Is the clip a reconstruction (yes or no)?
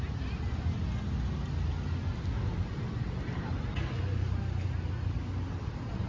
no